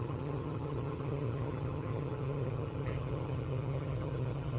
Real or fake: fake